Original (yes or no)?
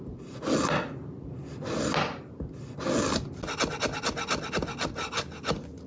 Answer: yes